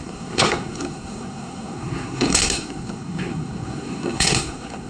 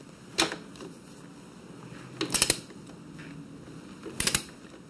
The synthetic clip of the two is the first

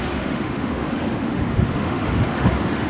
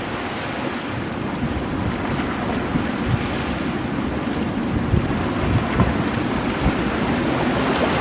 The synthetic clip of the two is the first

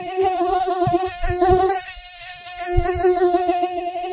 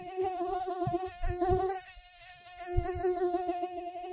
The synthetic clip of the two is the first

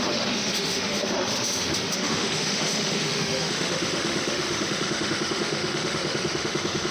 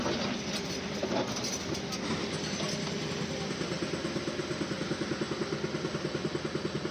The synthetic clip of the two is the first